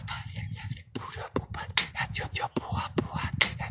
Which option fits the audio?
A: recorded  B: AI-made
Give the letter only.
A